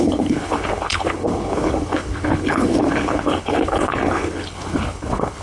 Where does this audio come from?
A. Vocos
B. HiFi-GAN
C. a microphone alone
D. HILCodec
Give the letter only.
D